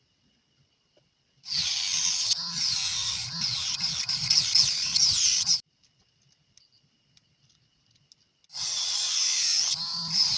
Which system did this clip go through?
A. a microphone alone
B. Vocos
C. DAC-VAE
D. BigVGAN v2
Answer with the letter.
A